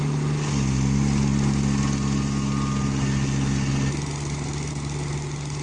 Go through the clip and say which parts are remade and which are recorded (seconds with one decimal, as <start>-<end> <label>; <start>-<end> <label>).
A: 0.0-5.6 recorded